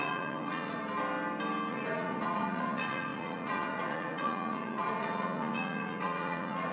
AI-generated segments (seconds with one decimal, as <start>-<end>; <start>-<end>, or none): 0.0-0.8; 1.7-6.7